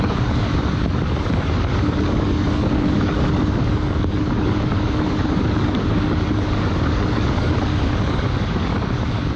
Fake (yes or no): yes